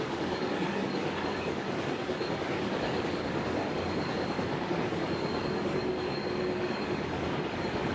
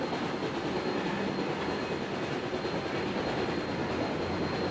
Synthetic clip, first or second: first